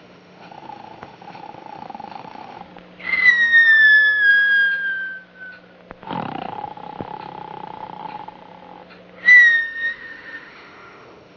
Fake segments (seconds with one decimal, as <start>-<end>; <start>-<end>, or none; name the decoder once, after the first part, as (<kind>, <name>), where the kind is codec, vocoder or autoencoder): 0.0-2.6 (autoencoder, DAC-VAE); 3.3-4.3; 9.6-11.4